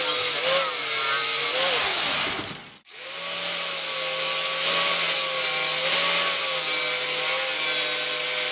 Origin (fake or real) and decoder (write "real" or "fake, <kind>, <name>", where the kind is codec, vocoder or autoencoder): real